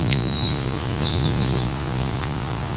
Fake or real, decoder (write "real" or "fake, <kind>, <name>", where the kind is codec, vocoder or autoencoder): fake, vocoder, Vocos